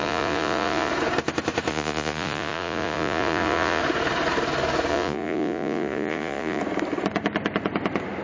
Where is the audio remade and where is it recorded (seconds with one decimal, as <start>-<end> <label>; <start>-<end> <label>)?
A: 0.0-0.9 remade; 0.9-1.7 recorded; 1.7-3.8 remade; 3.8-4.9 recorded; 4.9-6.6 remade; 6.6-8.2 recorded